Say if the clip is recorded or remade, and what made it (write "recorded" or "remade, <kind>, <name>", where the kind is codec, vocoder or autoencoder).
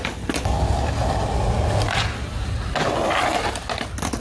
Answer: recorded